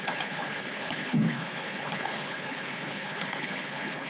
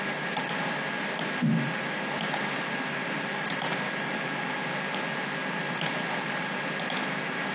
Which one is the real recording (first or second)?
second